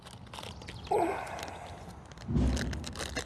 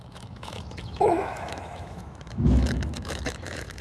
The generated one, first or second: second